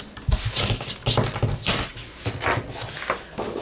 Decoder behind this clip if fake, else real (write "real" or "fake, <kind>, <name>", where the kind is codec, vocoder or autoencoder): real